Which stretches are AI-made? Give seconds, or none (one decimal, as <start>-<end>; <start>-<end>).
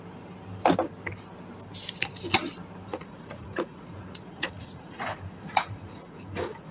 2.9-6.7